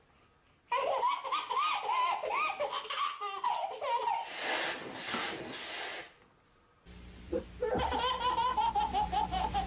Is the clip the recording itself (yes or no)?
yes